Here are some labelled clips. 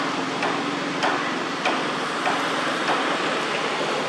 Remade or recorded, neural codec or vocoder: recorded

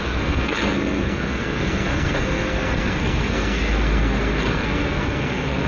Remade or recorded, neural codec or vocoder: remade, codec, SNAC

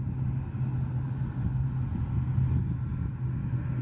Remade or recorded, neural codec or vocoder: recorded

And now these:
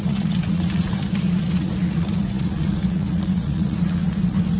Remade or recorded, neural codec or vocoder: remade, vocoder, Vocos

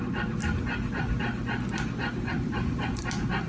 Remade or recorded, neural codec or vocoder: recorded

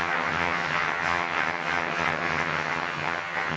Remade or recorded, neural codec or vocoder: remade, vocoder, HiFi-GAN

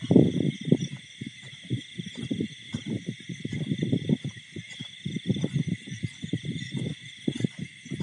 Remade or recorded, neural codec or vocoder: recorded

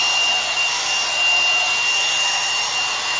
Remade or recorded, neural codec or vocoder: recorded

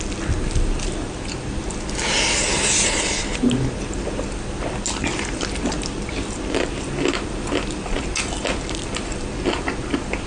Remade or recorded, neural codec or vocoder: recorded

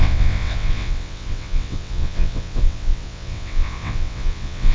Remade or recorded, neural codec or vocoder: remade, vocoder, WaveNeXt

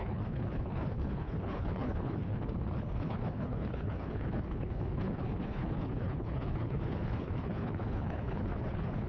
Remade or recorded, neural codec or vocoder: remade, codec, HILCodec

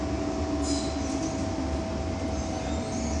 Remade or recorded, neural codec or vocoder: recorded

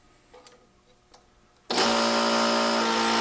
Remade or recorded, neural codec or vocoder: recorded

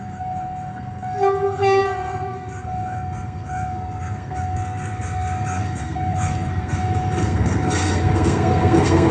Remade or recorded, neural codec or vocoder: remade, codec, SNAC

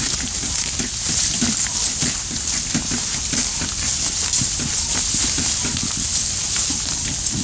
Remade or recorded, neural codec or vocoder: recorded